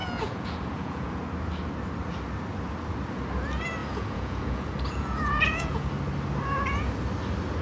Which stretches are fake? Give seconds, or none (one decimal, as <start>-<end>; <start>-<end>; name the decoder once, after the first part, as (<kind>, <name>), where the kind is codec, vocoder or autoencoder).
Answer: 0.0-1.1 (vocoder, Vocos); 3.8-5.9